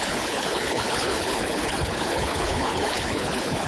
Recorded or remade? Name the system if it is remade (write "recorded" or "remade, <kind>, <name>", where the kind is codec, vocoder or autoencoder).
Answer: remade, codec, HILCodec